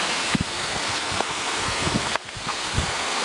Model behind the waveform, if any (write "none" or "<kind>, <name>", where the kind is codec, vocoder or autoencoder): codec, SNAC